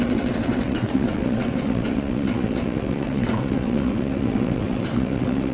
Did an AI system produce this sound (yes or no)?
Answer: yes